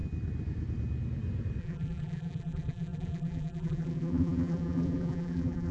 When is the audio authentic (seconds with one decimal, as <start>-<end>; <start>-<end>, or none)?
0.0-1.6